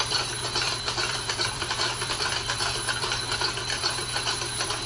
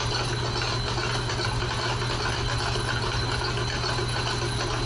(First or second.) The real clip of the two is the second